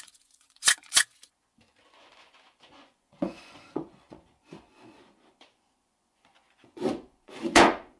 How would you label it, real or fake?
fake